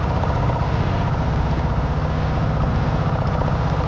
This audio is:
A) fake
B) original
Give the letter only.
B